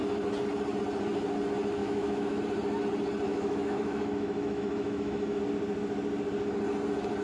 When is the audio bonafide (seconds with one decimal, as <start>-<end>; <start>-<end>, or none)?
0.0-1.8; 2.4-3.3; 5.4-7.2

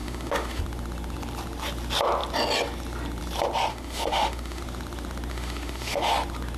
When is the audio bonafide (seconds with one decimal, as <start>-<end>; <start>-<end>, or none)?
0.6-3.7; 4.6-5.3; 6.0-6.6